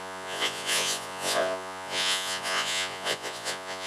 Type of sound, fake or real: fake